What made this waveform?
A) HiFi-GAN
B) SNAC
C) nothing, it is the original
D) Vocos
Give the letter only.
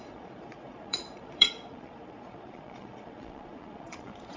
D